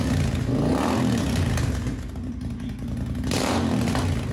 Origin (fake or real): real